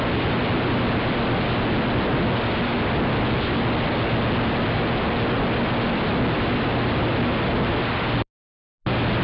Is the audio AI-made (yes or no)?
no